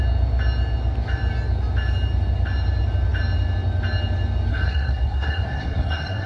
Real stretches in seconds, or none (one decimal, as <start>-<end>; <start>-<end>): 0.0-4.5